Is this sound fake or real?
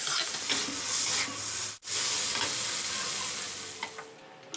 real